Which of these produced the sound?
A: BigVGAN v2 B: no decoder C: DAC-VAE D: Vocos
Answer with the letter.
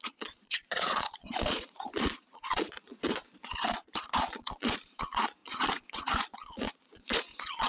D